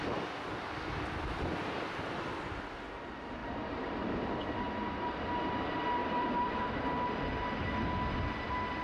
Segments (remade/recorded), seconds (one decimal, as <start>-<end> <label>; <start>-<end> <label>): 0.0-3.4 recorded; 3.4-5.2 remade; 5.2-6.0 recorded; 6.0-6.6 remade; 6.6-8.8 recorded